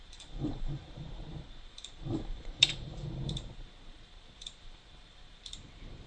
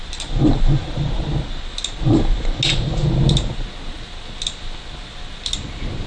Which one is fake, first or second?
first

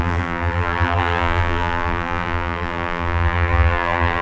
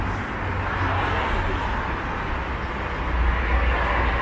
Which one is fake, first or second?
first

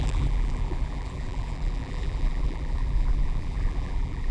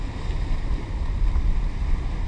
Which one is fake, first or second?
first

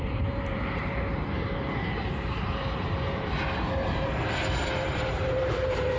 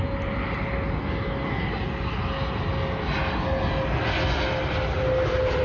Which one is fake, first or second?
first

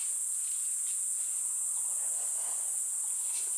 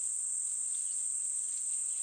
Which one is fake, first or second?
first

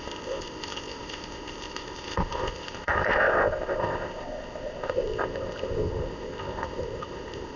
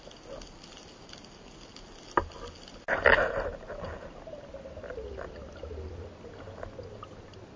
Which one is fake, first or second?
first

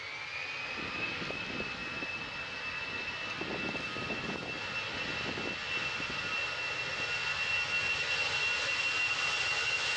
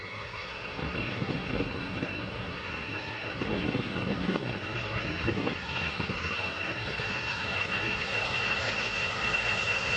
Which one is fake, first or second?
second